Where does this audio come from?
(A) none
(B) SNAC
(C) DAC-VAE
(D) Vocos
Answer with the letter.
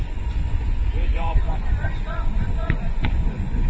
D